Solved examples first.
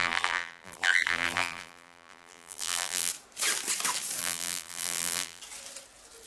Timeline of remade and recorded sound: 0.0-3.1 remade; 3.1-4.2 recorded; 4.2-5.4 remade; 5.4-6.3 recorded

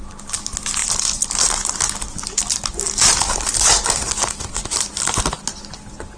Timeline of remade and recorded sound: 0.0-6.2 recorded

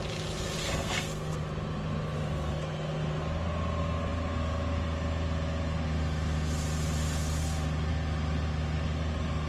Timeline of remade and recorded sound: 0.0-0.6 recorded; 0.6-1.4 remade; 1.4-9.5 recorded

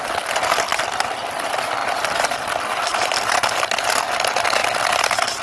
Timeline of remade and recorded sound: 0.0-0.7 recorded; 0.7-1.4 remade; 1.4-1.8 recorded; 1.8-4.0 remade; 4.0-5.4 recorded